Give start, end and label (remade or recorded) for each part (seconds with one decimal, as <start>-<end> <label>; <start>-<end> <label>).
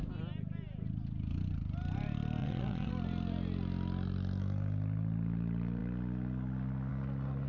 0.0-2.4 recorded; 2.4-2.9 remade; 2.9-7.5 recorded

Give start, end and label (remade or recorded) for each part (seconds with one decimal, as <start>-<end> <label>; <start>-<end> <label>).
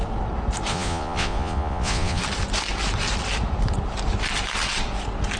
0.0-0.7 recorded; 0.7-2.2 remade; 2.2-5.4 recorded